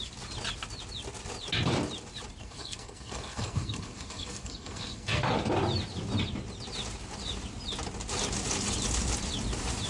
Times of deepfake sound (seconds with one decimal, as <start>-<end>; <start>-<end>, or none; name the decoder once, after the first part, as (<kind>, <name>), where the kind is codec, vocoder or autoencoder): 2.4-5.2 (codec, SNAC)